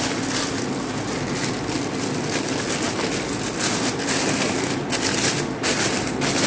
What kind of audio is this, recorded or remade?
recorded